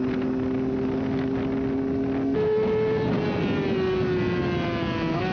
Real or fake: real